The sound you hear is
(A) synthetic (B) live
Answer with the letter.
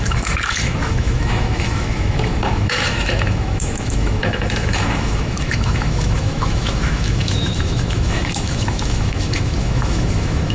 A